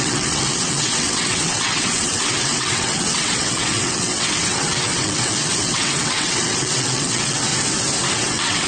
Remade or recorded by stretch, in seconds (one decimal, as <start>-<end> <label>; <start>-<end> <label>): 0.0-7.5 remade; 7.5-8.1 recorded; 8.1-8.7 remade